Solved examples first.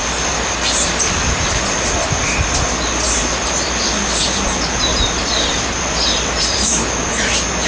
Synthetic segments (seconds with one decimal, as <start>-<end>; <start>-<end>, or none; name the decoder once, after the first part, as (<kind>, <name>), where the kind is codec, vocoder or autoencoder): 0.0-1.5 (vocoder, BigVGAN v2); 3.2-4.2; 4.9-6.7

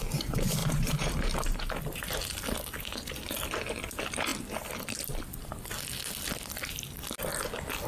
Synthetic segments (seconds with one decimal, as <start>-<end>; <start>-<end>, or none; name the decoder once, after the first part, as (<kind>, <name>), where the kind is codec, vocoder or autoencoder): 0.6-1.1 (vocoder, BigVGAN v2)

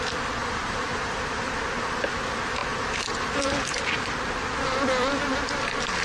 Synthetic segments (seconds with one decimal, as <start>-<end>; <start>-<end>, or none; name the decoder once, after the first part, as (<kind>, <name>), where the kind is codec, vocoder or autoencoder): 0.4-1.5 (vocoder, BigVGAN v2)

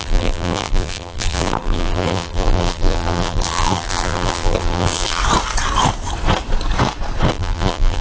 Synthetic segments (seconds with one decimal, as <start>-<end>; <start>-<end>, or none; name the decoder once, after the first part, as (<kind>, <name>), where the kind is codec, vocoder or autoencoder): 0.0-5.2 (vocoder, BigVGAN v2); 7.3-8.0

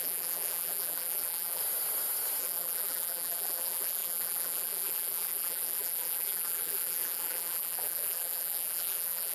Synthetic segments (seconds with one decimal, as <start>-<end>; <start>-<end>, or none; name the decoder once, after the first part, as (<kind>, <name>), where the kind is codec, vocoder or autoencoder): 0.0-1.6 (vocoder, BigVGAN v2); 2.4-9.3